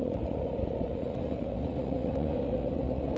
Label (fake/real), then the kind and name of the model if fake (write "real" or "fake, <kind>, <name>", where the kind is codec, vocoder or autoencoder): fake, vocoder, Vocos